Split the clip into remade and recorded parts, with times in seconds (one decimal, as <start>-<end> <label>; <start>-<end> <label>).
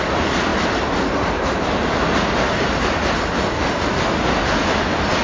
0.0-5.2 recorded